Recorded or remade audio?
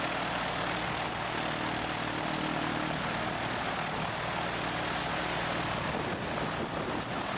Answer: recorded